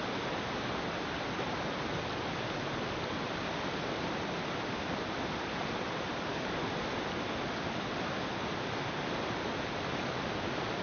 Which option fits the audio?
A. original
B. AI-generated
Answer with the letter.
A